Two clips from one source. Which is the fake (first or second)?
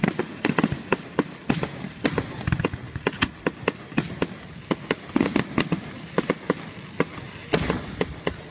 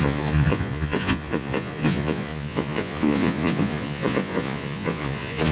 second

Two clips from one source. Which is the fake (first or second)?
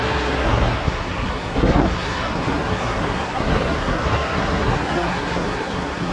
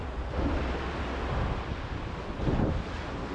first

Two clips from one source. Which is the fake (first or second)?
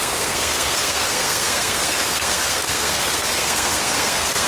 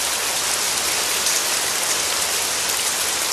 first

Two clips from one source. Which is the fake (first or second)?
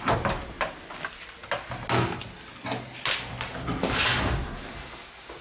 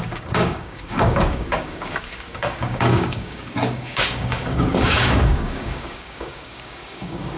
second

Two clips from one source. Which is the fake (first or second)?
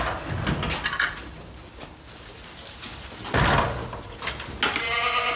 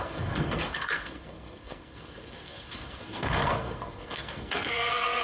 second